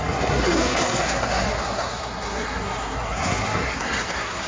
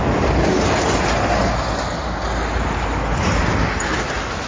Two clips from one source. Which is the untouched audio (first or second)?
second